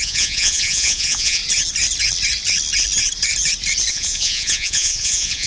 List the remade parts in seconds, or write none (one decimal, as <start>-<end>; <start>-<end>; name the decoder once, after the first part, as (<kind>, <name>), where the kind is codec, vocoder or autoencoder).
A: 0.0-1.4 (vocoder, Vocos); 3.9-5.5